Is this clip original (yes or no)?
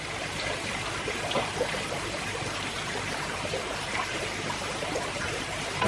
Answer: no